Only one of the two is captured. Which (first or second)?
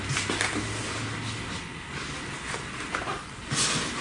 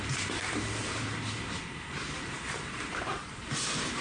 first